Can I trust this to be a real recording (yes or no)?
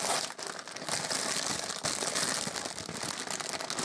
yes